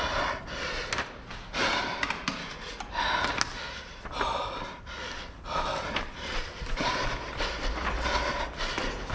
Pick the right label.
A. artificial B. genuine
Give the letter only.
B